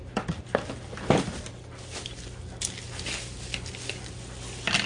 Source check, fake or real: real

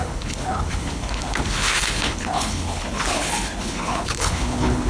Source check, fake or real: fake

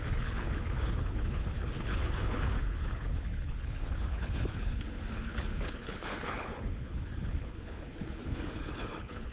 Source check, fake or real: fake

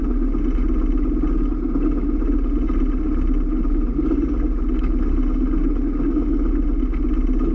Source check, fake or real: real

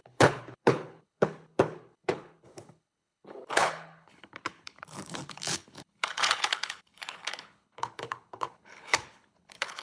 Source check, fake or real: fake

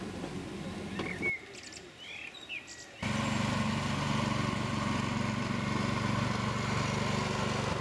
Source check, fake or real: real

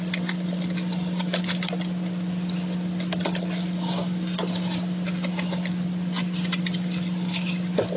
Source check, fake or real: real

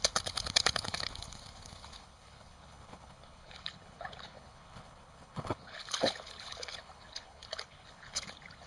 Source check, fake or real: fake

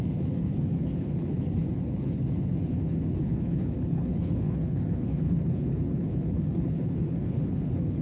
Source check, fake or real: fake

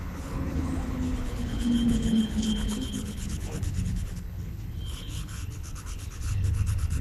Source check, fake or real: fake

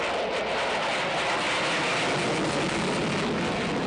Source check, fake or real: real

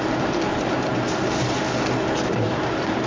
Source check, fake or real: real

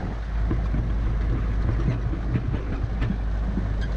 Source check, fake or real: real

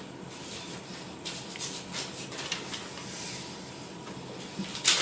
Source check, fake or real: real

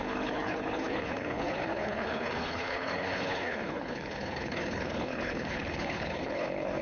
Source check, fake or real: fake